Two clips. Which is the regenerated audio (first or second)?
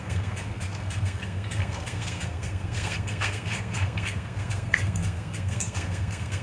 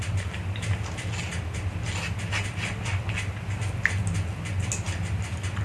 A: first